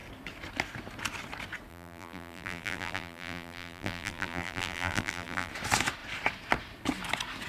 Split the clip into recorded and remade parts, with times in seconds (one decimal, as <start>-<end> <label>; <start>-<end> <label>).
0.0-1.7 recorded; 1.7-5.5 remade; 5.5-7.5 recorded